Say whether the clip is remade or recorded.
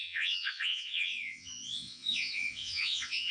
remade